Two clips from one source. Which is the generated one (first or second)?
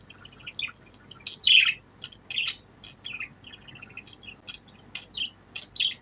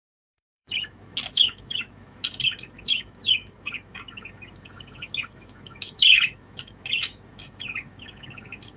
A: second